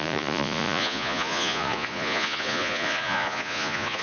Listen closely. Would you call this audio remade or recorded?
remade